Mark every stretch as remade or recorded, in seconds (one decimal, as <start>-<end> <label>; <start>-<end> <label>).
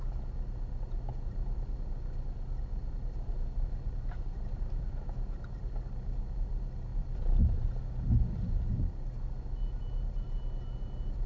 0.0-11.3 recorded